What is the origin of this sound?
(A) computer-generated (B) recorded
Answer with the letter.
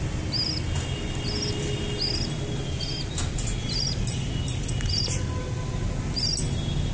B